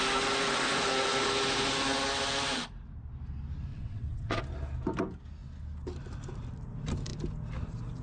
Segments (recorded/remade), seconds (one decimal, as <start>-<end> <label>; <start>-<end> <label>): 0.0-3.7 recorded; 3.7-4.4 remade; 4.4-8.0 recorded